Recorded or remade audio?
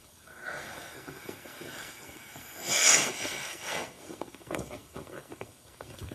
remade